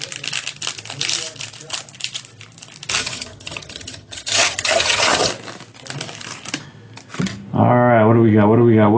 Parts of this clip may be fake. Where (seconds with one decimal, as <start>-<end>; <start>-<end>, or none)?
3.0-5.3